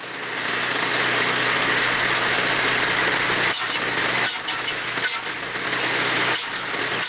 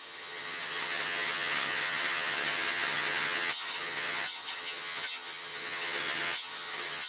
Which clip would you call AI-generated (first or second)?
second